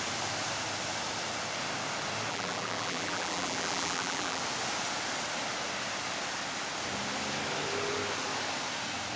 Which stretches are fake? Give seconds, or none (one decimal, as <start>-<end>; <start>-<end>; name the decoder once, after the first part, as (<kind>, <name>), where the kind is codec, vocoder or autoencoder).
2.3-4.4 (vocoder, BigVGAN v2)